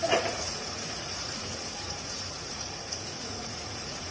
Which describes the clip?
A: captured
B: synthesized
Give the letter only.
B